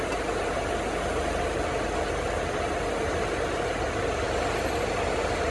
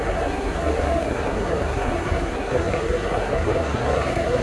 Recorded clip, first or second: first